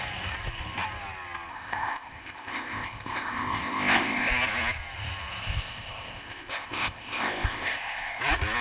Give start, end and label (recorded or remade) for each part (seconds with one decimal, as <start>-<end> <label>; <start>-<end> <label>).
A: 0.0-1.5 recorded; 1.5-4.3 remade; 4.3-5.4 recorded; 5.4-8.2 remade; 8.2-8.6 recorded